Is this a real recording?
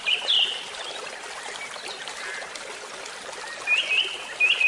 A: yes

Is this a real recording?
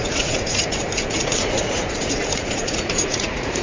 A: no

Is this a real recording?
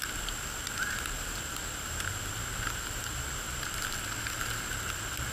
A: yes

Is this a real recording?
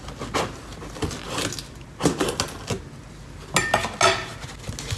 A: yes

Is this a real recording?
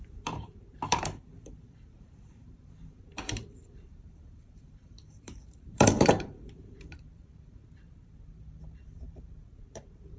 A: no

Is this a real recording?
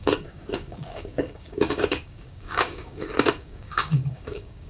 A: no